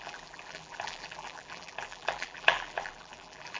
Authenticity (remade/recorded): remade